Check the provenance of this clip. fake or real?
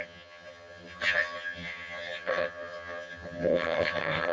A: fake